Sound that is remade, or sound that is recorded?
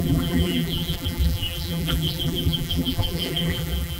remade